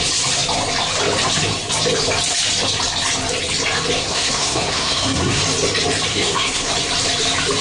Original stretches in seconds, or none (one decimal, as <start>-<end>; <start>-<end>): 0.0-4.0; 5.4-6.1; 6.7-7.6